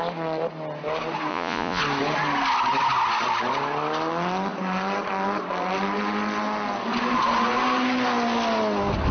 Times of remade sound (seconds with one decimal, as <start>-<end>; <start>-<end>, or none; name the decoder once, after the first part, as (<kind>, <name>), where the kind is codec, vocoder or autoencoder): 1.3-1.8 (vocoder, Vocos)